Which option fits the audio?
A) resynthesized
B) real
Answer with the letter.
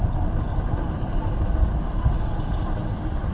B